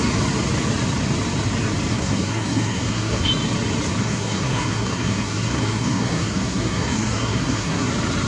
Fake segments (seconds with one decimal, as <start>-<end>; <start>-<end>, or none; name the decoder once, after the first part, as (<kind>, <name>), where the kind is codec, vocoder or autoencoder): 1.9-3.3 (codec, SNAC); 4.0-7.9